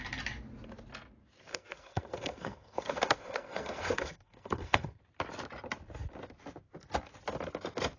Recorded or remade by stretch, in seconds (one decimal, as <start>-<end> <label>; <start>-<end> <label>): 0.0-1.5 recorded; 1.5-5.0 remade; 5.0-8.0 recorded